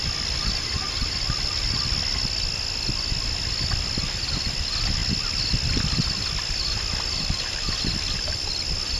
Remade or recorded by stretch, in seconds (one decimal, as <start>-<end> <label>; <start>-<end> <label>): 0.0-9.0 recorded